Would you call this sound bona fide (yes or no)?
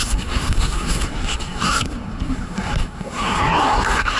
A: no